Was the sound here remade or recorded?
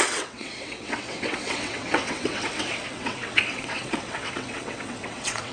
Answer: remade